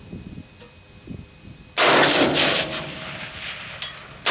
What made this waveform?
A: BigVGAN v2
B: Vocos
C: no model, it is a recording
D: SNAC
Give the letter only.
C